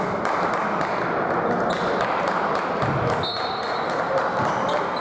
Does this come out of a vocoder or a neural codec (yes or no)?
no